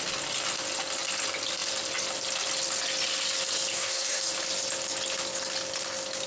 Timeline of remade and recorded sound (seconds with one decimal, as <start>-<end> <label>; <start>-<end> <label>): 0.0-3.7 recorded; 3.7-4.3 remade; 4.3-6.3 recorded